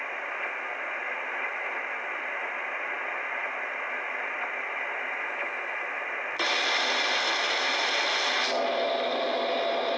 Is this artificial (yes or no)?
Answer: no